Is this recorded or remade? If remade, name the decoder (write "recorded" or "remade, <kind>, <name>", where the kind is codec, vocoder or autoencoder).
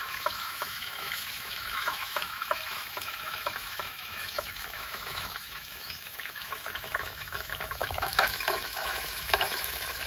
remade, autoencoder, DAC-VAE